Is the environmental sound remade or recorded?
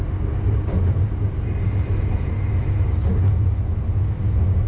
recorded